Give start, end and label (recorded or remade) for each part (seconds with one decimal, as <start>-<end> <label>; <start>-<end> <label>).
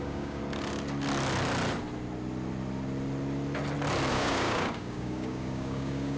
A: 0.0-0.4 remade; 0.4-4.1 recorded; 4.1-6.2 remade